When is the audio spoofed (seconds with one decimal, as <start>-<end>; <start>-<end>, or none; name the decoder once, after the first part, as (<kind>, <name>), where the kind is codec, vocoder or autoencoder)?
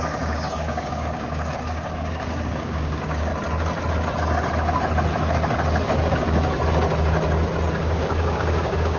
0.0-3.3 (codec, DAC); 7.7-9.0